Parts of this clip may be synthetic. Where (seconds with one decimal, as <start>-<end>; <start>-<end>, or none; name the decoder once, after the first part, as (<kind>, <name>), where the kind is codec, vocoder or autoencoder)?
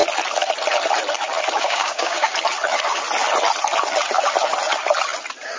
1.6-2.3 (codec, DAC)